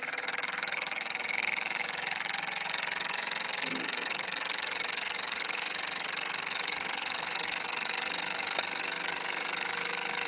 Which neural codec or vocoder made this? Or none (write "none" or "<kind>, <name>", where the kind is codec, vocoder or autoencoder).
codec, DAC